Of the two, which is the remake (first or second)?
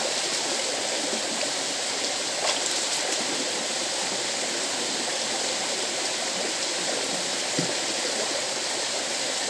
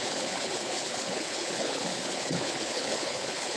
second